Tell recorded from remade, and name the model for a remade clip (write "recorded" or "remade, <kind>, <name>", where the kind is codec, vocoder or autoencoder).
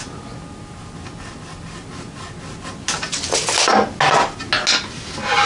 recorded